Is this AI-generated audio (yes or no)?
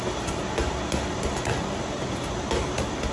no